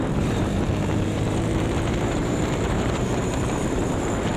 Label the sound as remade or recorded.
remade